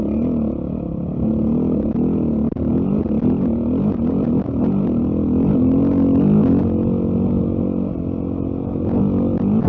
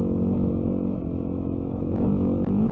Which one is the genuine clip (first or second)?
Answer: first